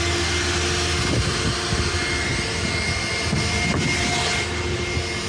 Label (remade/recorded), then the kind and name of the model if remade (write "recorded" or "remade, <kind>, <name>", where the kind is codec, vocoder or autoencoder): recorded